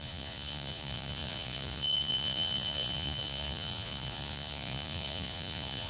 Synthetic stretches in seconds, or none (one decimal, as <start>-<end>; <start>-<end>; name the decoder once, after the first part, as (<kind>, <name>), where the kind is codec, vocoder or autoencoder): 0.0-5.9 (vocoder, Vocos)

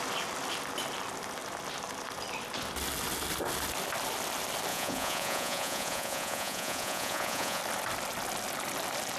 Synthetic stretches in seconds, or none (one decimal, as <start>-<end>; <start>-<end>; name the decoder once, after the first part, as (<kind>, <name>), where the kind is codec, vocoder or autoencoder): 4.7-7.6 (vocoder, Vocos)

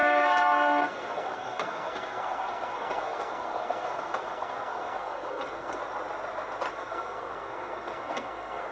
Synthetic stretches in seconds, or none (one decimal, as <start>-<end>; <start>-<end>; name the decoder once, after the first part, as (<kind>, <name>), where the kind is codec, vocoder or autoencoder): 0.0-5.8 (codec, SNAC); 6.7-8.7

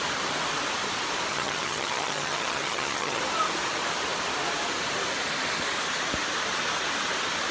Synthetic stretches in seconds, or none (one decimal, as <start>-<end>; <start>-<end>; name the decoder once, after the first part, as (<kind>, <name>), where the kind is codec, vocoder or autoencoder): 1.3-3.2 (vocoder, HiFi-GAN)

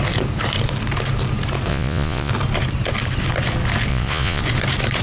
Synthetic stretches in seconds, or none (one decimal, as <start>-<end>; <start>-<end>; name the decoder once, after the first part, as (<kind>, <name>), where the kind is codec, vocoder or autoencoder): 1.7-2.3 (vocoder, Vocos); 3.9-4.4